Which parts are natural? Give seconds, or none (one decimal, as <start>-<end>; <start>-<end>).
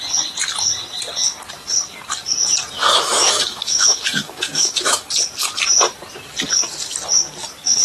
0.0-2.9; 5.1-7.8